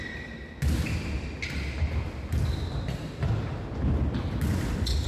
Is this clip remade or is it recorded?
recorded